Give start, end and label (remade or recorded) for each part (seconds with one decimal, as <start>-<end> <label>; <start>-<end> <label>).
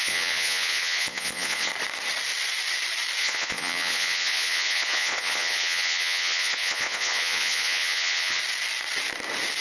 0.0-1.7 remade; 1.7-3.2 recorded; 3.2-8.4 remade; 8.4-9.6 recorded